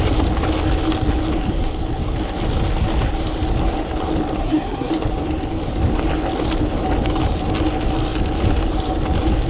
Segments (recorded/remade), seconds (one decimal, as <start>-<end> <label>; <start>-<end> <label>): 0.0-4.4 recorded; 4.4-4.9 remade; 4.9-9.5 recorded